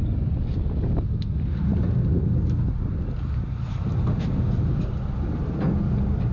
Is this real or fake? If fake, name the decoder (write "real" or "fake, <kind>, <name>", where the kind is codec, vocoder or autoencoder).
real